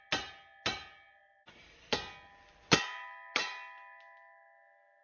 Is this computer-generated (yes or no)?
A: no